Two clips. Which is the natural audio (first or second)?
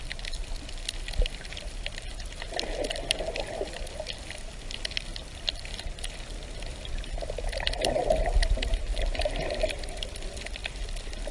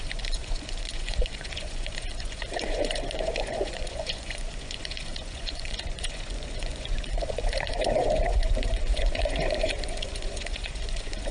first